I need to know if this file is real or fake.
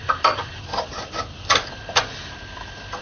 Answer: real